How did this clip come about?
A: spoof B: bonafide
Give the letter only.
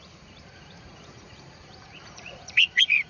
A